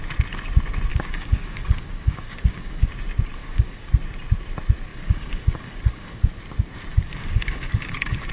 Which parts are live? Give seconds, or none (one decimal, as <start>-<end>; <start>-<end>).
0.0-0.9; 2.9-3.4; 3.9-4.9; 6.3-6.9